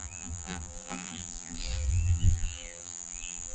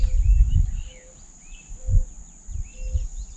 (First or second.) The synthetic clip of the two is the first